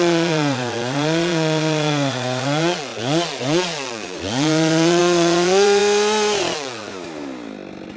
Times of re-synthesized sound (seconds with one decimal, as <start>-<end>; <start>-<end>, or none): 0.0-5.8; 6.4-6.9